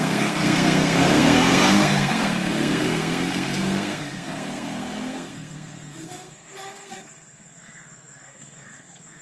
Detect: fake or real fake